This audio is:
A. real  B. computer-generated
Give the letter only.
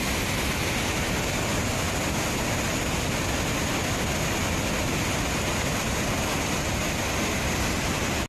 A